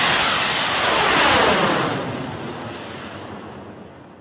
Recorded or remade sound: recorded